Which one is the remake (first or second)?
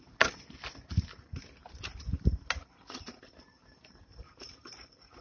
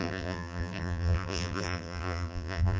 second